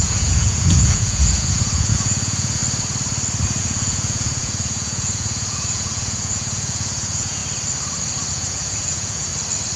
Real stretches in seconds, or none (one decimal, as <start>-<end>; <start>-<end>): 2.6-3.6; 7.4-8.3; 9.3-9.8